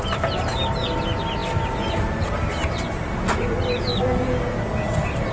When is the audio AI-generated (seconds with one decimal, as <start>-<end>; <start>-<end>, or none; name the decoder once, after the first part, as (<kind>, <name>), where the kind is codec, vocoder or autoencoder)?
none